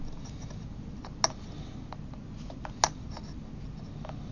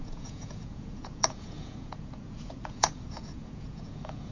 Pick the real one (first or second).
first